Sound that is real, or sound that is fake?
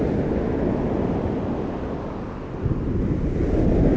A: real